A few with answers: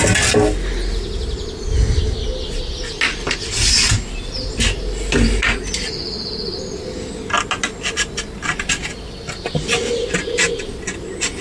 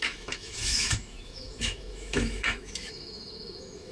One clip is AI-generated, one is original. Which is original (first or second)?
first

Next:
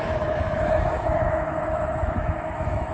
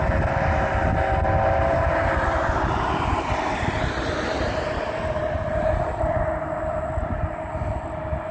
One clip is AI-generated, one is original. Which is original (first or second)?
second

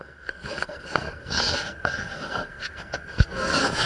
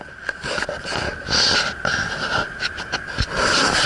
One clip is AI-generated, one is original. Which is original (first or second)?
second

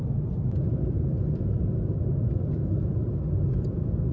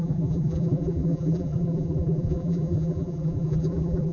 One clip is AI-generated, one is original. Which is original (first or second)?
first